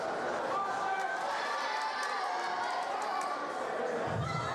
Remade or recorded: recorded